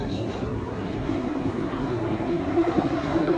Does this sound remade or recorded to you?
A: remade